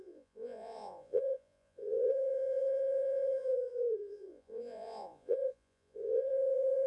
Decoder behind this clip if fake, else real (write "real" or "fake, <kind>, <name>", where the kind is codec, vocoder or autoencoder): fake, vocoder, Vocos